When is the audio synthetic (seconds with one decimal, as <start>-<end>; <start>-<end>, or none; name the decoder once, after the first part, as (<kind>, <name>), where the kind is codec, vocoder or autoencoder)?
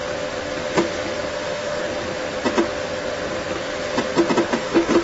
1.3-1.8 (autoencoder, DAC-VAE); 4.5-5.0